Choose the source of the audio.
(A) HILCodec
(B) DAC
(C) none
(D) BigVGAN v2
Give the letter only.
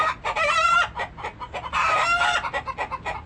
C